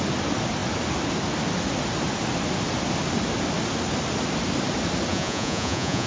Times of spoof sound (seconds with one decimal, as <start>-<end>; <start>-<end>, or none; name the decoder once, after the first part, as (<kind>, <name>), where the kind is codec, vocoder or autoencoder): 5.1-6.1 (vocoder, Vocos)